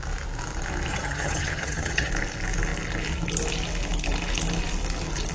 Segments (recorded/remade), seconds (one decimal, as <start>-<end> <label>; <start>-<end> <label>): 0.0-0.9 recorded; 0.9-2.1 remade; 2.1-5.3 recorded